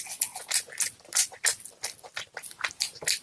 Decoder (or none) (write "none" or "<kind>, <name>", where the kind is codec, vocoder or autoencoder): none